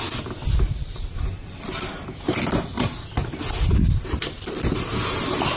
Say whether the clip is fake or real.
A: real